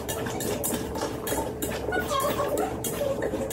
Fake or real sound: fake